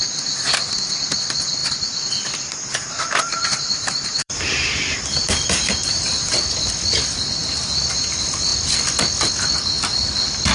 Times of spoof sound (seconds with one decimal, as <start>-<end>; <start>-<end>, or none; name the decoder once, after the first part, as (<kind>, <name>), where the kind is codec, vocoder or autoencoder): 1.6-6.3 (vocoder, BigVGAN v2); 7.4-8.1